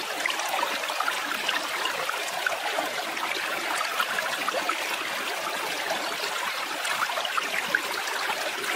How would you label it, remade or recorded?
recorded